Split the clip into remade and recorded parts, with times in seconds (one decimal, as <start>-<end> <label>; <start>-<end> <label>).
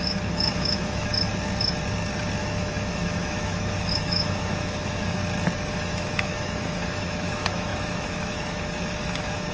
0.0-1.1 remade; 1.1-2.4 recorded; 2.4-5.2 remade; 5.2-5.7 recorded; 5.7-9.5 remade